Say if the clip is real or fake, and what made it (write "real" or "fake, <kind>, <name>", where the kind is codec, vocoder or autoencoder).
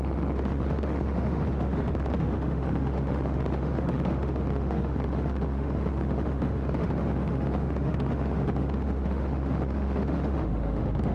fake, autoencoder, DAC-VAE